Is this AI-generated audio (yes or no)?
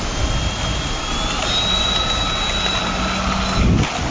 no